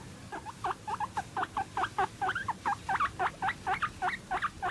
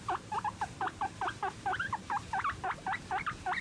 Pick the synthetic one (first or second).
second